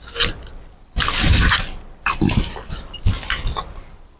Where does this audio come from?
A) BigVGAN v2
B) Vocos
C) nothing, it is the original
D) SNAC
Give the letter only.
C